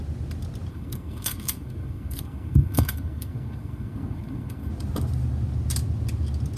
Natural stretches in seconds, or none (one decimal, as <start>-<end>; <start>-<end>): 0.0-0.7; 4.7-6.6